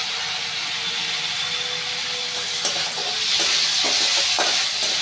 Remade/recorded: recorded